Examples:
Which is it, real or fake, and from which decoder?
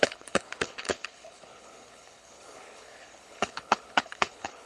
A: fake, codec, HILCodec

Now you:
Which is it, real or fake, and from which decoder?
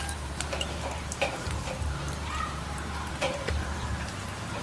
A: fake, vocoder, BigVGAN v2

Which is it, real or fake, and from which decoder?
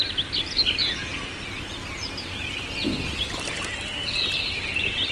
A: real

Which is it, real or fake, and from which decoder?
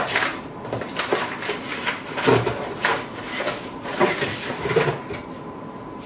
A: fake, vocoder, BigVGAN v2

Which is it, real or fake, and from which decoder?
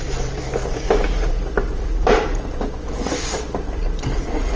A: fake, vocoder, BigVGAN v2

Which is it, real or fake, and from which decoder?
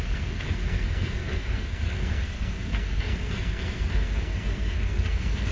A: fake, codec, SNAC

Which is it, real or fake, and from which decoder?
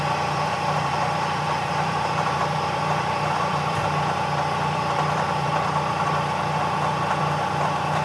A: fake, vocoder, BigVGAN v2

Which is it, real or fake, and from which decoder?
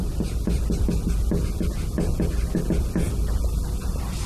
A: real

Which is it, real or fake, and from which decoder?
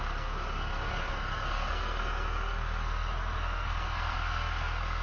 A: fake, codec, SNAC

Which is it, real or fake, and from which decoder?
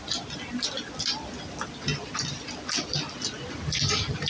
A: real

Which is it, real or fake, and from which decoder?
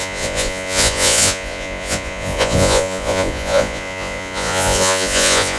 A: fake, vocoder, Vocos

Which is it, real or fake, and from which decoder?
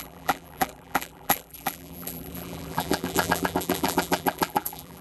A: fake, vocoder, BigVGAN v2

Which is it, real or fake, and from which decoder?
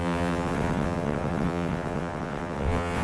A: fake, vocoder, WaveNeXt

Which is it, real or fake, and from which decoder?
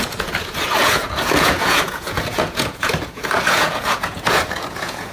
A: fake, vocoder, Vocos